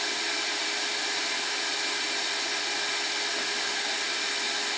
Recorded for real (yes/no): yes